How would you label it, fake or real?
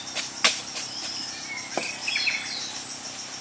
real